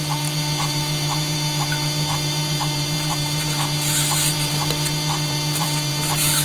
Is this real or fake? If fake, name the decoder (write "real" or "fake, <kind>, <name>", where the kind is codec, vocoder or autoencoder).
fake, vocoder, BigVGAN v2